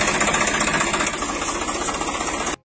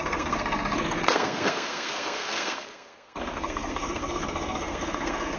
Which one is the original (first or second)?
first